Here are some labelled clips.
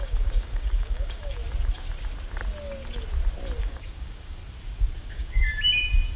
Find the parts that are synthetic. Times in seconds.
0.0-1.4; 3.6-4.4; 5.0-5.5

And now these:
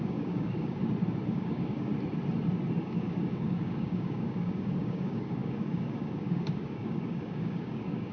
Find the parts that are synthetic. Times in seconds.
0.0-0.8; 1.3-1.9; 2.8-8.1

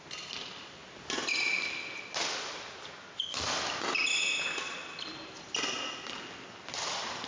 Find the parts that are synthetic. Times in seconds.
none